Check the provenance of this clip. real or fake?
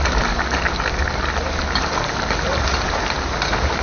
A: real